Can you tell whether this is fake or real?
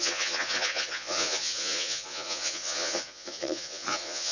fake